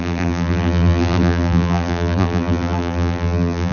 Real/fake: fake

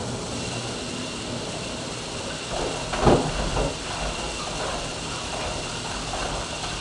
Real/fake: real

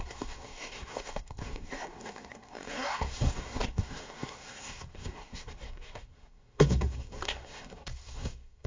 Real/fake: fake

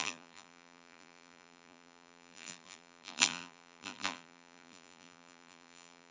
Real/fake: fake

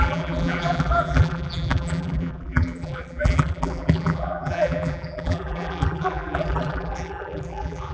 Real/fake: fake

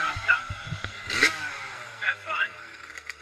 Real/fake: fake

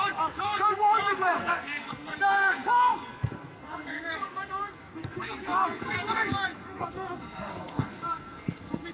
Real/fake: fake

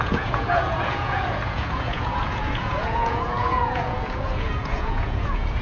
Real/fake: fake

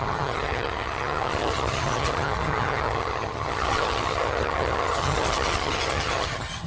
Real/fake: fake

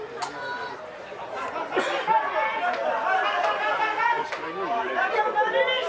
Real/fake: real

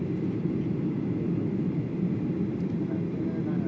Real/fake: real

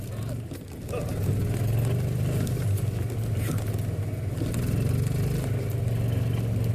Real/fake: real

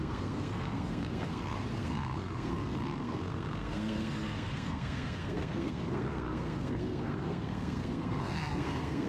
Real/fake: fake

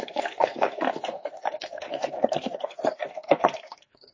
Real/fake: fake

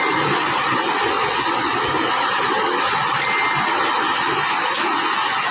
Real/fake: real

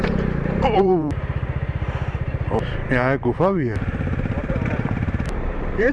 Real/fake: fake